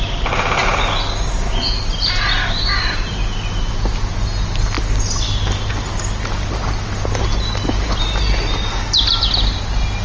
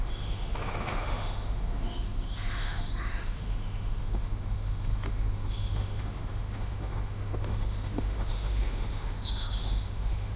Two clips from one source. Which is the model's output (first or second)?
second